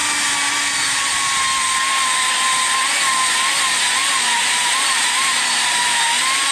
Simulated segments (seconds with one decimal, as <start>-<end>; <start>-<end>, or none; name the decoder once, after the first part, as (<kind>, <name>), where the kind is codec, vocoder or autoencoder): 4.0-6.1 (vocoder, BigVGAN v2)